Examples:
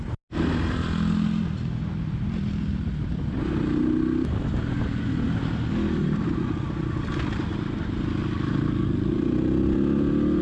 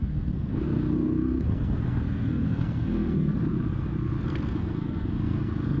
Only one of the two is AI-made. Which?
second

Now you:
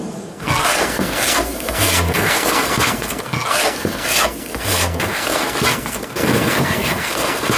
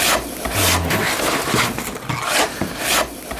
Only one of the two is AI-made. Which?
first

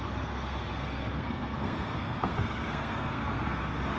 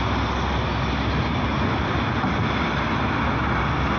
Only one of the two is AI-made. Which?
first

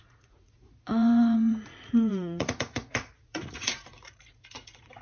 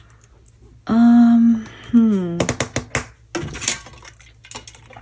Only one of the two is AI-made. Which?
first